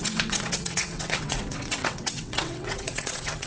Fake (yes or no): yes